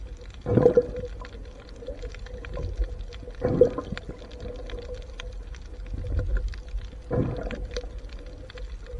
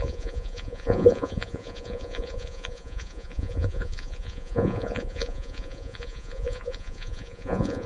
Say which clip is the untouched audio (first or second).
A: first